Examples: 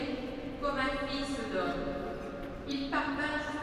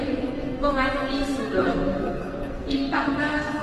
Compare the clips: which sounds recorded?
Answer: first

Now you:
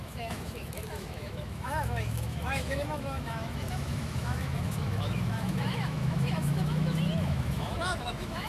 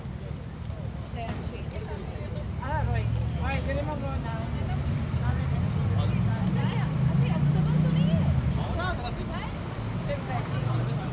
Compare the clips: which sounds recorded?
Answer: second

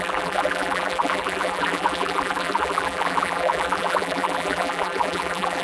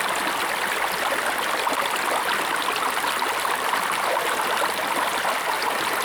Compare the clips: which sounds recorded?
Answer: second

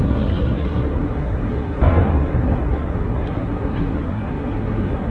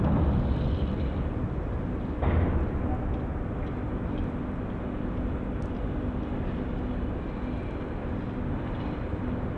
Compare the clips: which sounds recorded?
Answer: second